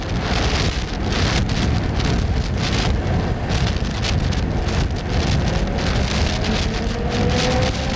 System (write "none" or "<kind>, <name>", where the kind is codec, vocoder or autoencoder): none